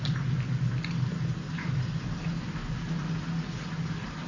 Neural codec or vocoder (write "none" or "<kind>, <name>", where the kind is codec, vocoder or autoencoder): none